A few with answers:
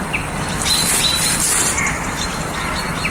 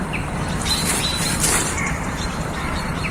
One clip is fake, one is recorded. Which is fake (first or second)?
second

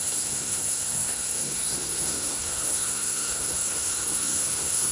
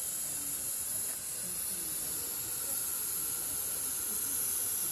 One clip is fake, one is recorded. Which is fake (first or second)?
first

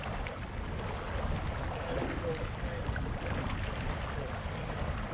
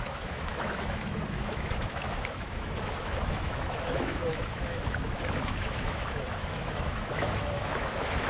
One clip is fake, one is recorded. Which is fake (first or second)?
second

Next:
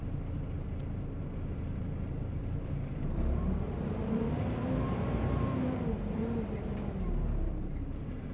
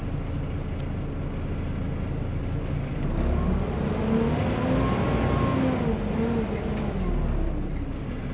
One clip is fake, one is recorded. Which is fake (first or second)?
first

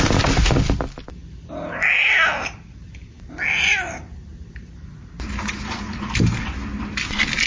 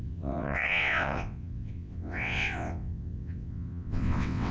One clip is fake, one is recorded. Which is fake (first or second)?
second